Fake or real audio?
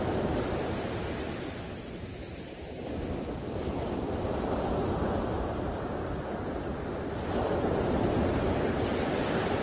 real